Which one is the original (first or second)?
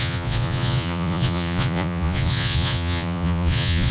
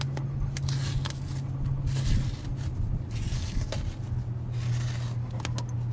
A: second